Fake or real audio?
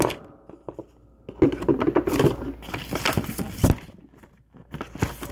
real